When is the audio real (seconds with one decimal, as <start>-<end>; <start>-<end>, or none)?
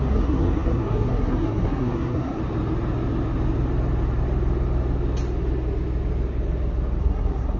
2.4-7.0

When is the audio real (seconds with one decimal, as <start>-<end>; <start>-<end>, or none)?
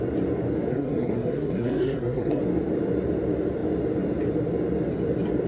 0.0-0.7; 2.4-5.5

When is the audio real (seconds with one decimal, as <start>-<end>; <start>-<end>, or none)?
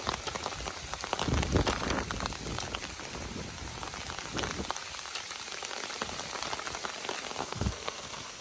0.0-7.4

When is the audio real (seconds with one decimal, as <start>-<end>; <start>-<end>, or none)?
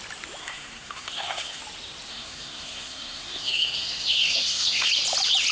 0.0-0.4; 1.6-2.1; 4.9-5.5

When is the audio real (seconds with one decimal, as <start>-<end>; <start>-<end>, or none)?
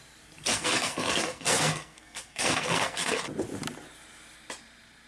0.0-0.5; 3.2-5.1